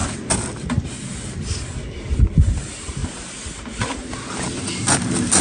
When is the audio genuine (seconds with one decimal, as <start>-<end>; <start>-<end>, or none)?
0.0-5.4